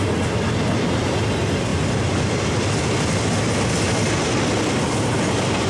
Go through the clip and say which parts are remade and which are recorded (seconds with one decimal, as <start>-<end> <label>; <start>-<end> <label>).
0.0-5.7 recorded